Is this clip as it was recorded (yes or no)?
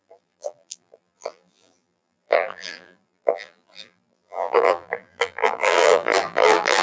no